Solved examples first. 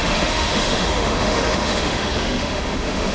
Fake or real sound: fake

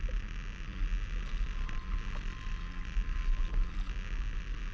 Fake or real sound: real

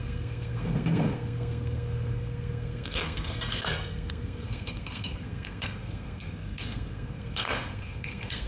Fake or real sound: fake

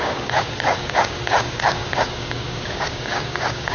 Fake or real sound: fake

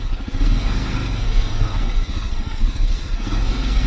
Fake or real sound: fake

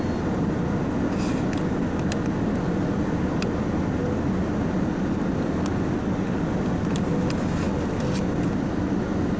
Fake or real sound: real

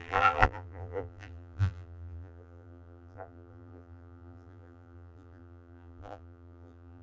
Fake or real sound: fake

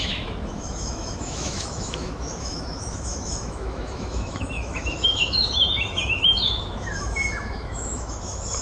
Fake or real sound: fake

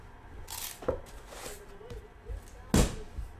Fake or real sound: real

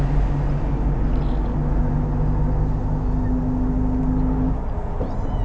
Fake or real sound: real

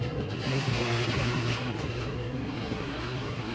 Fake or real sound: fake